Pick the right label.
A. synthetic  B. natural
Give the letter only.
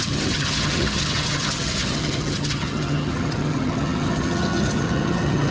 A